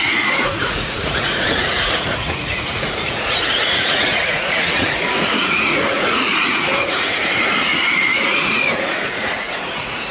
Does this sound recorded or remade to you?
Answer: remade